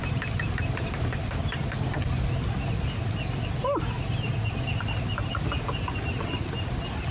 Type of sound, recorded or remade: recorded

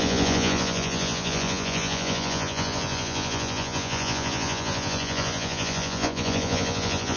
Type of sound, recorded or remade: remade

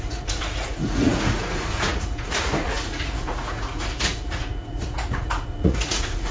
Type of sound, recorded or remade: remade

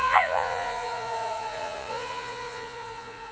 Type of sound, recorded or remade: remade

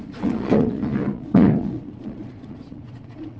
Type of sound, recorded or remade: remade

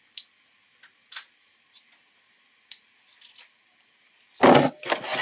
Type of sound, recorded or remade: recorded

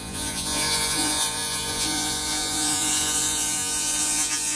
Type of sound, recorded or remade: remade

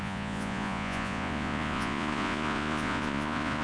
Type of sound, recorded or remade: remade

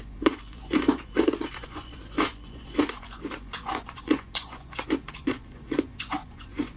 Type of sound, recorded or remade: remade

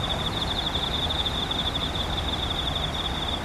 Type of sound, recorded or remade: recorded